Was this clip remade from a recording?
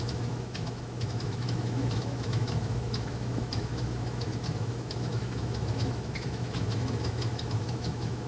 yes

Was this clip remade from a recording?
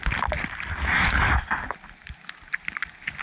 no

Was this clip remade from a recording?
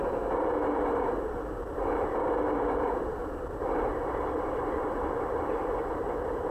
yes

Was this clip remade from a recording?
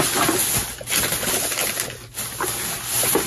no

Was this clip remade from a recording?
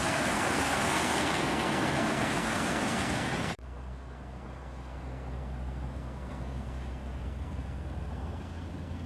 yes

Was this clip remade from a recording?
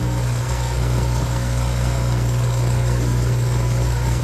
yes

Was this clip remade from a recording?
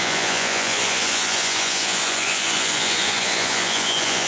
yes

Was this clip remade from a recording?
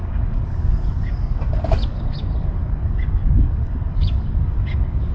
yes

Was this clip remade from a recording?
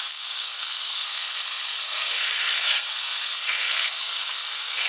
yes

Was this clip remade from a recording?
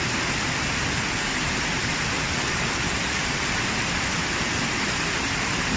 no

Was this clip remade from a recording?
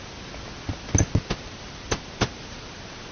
no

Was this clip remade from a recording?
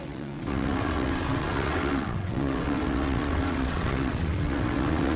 yes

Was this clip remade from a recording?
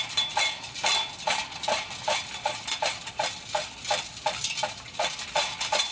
yes